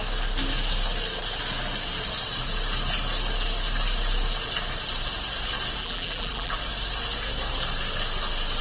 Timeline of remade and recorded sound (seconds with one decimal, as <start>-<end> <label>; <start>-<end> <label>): 0.0-5.8 recorded; 5.8-6.5 remade; 6.5-8.6 recorded